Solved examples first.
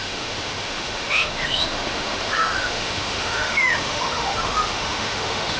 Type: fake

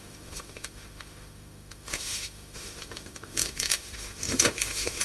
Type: fake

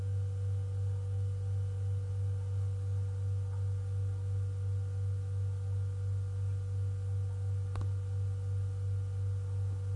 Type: real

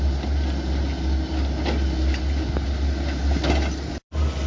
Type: real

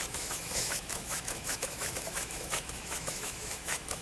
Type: fake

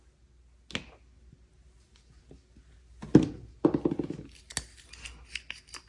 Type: real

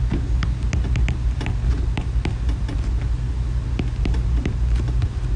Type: real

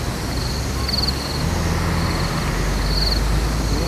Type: real